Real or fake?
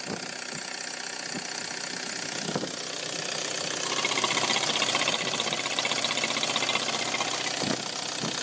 real